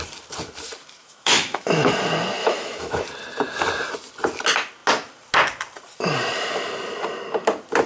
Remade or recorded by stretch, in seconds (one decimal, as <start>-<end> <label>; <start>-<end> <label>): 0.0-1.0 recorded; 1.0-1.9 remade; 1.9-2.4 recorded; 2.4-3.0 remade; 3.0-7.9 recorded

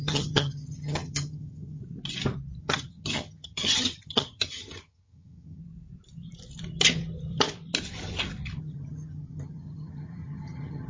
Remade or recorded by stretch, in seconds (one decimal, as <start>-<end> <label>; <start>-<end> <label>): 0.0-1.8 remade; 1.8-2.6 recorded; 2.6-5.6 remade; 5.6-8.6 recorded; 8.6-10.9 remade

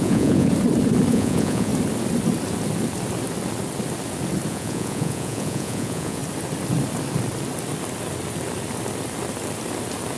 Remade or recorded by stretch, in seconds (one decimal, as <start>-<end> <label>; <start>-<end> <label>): 0.0-0.5 remade; 0.5-1.1 recorded; 1.1-1.7 remade; 1.7-4.5 recorded; 4.5-6.2 remade; 6.2-10.2 recorded

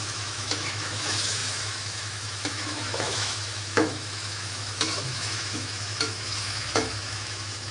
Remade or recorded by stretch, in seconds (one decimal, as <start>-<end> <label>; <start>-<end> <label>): 0.0-7.7 remade